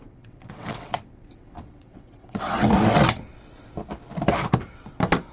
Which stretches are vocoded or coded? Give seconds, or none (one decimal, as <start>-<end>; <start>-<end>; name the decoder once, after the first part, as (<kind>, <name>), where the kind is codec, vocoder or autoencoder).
0.0-2.4 (vocoder, WaveNeXt)